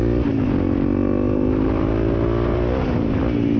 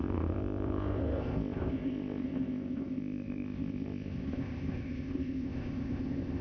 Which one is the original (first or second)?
first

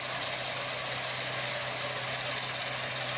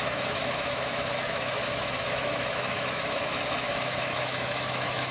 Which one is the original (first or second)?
first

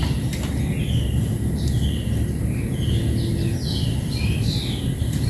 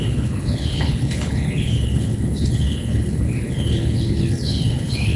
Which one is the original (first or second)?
first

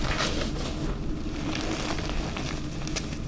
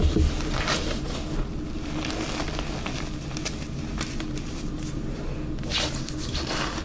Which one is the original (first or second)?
second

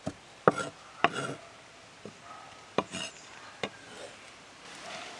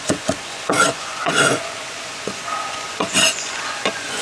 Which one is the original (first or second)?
first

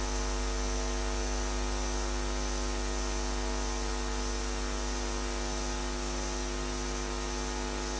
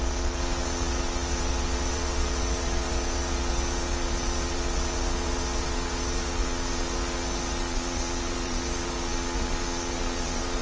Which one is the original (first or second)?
first